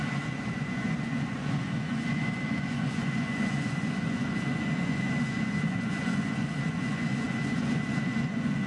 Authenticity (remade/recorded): remade